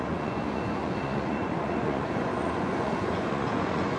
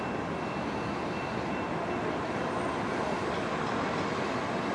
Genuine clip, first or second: second